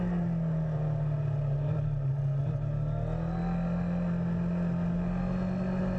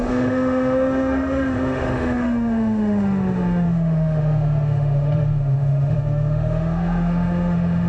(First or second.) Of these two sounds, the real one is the first